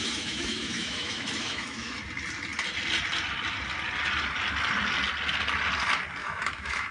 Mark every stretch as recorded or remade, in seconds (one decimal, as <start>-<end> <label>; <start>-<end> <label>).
0.0-2.0 remade; 2.0-6.2 recorded; 6.2-6.9 remade